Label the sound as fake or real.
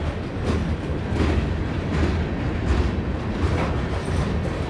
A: real